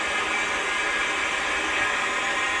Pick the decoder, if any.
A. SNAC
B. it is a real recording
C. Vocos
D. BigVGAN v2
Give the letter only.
B